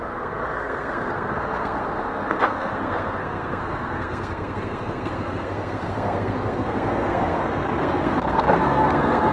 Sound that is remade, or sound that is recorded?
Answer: remade